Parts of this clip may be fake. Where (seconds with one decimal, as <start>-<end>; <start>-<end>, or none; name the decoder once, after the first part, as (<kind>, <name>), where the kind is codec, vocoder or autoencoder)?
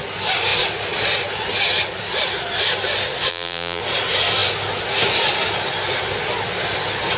3.3-3.8 (vocoder, BigVGAN v2)